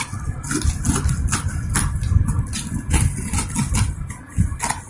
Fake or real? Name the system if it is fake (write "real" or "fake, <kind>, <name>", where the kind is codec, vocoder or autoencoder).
real